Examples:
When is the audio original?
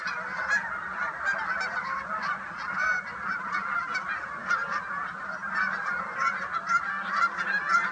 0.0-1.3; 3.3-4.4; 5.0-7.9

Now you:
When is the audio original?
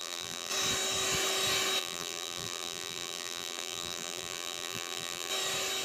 0.5-1.8; 5.3-5.8